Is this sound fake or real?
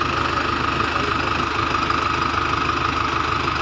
real